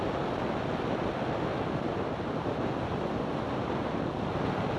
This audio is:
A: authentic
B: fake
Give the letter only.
A